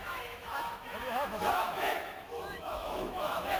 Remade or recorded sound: remade